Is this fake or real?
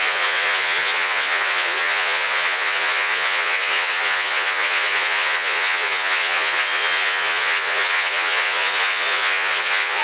fake